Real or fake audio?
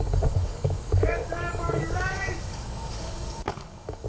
fake